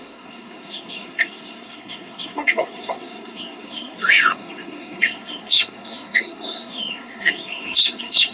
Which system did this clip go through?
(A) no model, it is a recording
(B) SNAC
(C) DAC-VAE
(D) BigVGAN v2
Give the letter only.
B